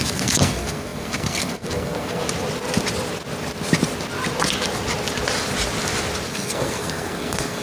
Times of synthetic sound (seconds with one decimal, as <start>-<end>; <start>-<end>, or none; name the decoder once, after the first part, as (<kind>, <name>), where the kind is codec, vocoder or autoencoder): 0.0-2.2 (codec, SNAC); 6.3-7.6